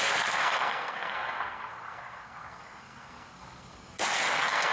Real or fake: fake